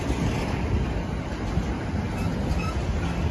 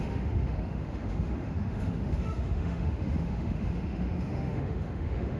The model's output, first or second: second